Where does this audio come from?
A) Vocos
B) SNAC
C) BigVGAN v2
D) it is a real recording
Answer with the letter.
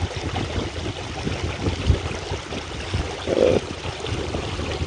D